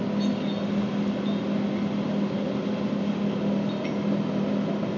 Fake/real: real